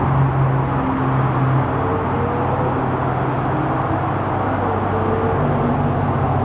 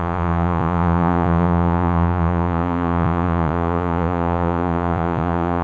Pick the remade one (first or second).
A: second